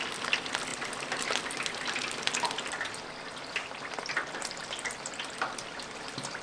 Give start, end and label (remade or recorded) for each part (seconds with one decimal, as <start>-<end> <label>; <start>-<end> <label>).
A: 0.0-6.4 recorded